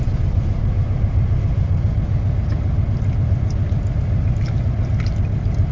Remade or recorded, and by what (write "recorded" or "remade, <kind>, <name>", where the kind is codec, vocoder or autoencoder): recorded